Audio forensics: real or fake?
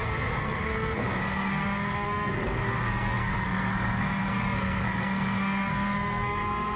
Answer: fake